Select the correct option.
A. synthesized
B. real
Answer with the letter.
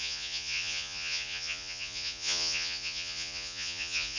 A